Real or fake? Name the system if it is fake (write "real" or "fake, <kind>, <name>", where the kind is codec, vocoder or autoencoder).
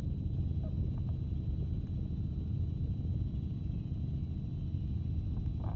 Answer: real